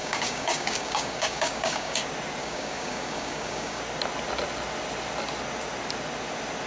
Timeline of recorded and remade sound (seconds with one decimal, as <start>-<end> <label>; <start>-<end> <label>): 0.0-2.0 remade; 2.0-2.4 recorded; 2.4-3.8 remade; 3.8-6.7 recorded

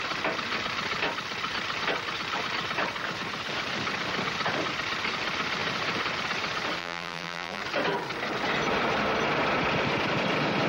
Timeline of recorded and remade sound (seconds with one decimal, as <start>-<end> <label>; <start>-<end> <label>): 0.0-6.8 recorded; 6.8-7.6 remade; 7.6-10.7 recorded

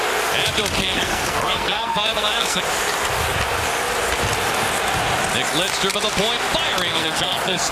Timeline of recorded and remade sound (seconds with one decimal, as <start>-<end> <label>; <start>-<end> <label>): 0.0-0.8 recorded; 0.8-2.6 remade; 2.6-6.9 recorded; 6.9-7.7 remade

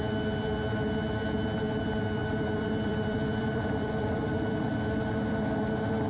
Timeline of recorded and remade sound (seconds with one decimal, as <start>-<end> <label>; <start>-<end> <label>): 0.0-2.2 recorded; 2.2-4.3 remade; 4.3-6.1 recorded